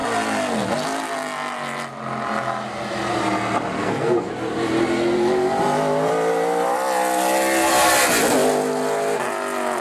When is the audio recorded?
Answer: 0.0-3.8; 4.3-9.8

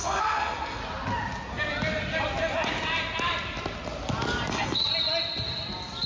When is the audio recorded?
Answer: 0.8-4.5; 4.9-6.1

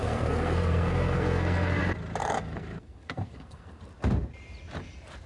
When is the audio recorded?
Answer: 1.8-2.2; 3.8-5.3

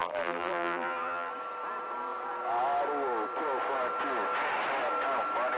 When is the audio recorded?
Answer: 1.3-5.6